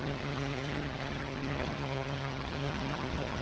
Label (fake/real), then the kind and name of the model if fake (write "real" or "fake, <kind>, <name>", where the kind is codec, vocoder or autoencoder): fake, vocoder, HiFi-GAN